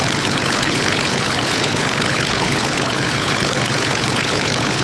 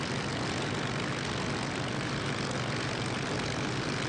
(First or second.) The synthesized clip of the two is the first